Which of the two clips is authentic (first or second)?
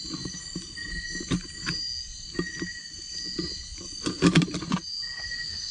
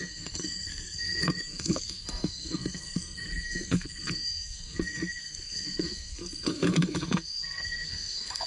first